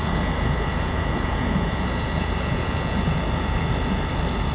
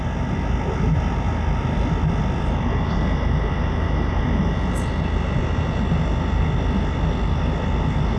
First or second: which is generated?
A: first